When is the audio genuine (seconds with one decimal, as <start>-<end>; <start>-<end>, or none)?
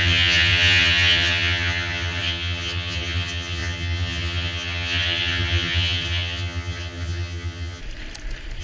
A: 7.8-8.6